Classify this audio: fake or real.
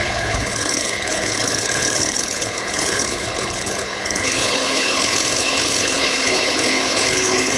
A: fake